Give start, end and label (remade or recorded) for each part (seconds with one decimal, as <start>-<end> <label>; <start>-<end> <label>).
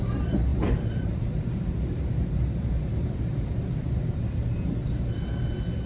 0.0-0.5 recorded; 0.5-4.0 remade; 4.0-5.9 recorded